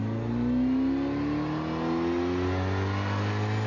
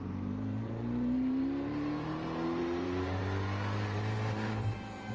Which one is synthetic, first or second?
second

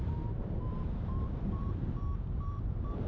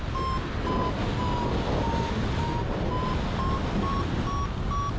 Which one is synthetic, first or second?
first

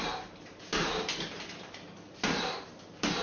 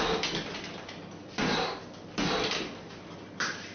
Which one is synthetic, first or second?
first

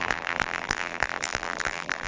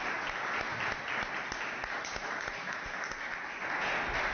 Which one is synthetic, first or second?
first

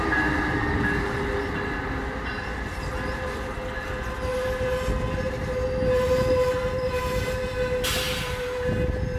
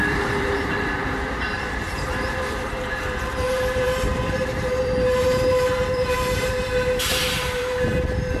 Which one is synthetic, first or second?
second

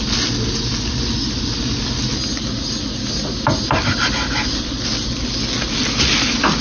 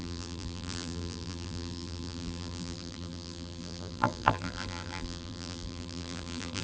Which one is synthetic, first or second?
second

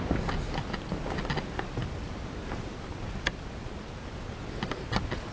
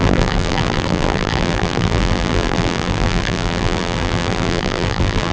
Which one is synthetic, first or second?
second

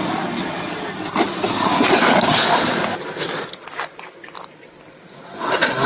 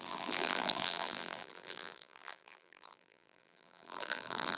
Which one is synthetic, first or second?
second